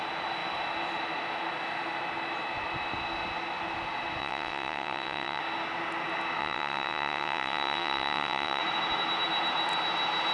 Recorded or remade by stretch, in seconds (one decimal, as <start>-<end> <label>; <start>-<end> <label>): 0.0-4.2 recorded; 4.2-5.4 remade; 5.4-6.4 recorded; 6.4-8.6 remade; 8.6-10.3 recorded

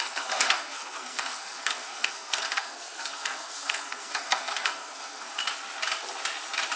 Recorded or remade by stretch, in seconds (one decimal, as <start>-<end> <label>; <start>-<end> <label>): 0.0-5.4 remade; 5.4-6.8 recorded

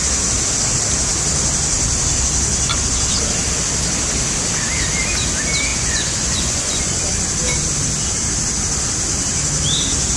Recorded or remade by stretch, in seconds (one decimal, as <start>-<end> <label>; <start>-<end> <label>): 0.0-5.7 recorded; 5.7-7.0 remade; 7.0-10.2 recorded